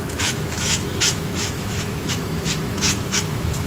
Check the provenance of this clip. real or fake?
fake